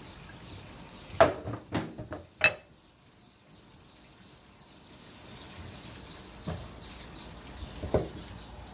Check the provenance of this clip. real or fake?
real